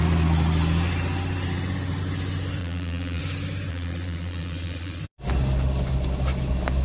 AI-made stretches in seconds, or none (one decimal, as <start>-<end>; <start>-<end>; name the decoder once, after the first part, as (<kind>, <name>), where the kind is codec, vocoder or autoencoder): 2.6-3.2 (vocoder, Vocos); 3.7-5.0